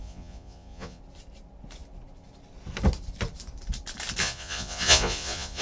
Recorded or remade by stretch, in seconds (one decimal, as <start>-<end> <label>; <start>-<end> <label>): 0.0-1.0 remade; 1.0-4.2 recorded; 4.2-5.6 remade